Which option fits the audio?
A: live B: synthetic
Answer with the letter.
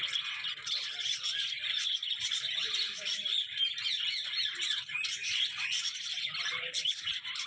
A